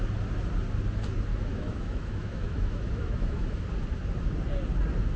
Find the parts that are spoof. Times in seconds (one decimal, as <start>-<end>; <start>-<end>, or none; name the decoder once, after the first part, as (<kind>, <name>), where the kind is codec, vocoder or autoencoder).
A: 1.3-3.6 (autoencoder, DAC-VAE)